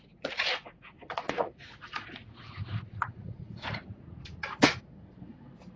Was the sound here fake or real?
fake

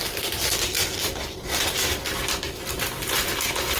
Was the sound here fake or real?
real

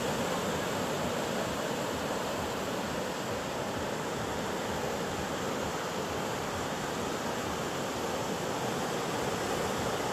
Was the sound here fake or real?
real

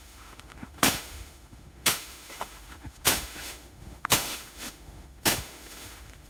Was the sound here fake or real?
fake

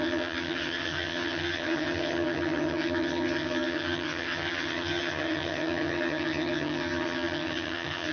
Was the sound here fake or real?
fake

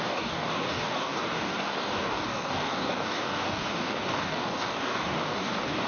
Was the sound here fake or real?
fake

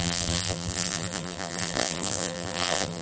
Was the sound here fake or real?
fake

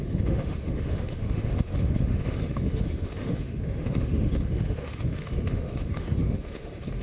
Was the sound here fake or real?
fake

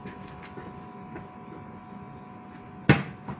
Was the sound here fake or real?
real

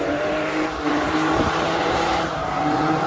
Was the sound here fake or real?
fake